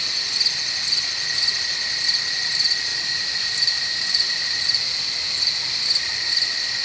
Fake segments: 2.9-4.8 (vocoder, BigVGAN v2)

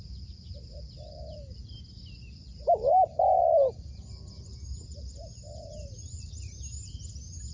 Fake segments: 2.4-3.4 (vocoder, BigVGAN v2); 4.5-6.3

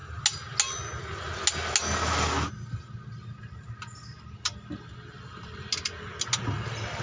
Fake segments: none